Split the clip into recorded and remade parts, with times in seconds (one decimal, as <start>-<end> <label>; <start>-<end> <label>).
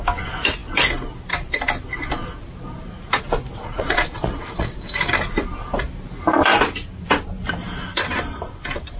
0.0-3.6 recorded; 3.6-4.8 remade; 4.8-9.0 recorded